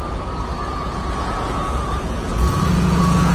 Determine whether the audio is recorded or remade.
remade